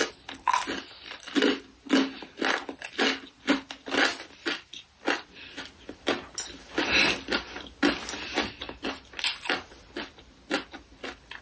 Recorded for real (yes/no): yes